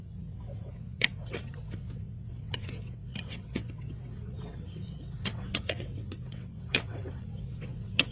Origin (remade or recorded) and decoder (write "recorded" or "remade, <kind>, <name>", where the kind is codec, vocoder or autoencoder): remade, vocoder, WaveNeXt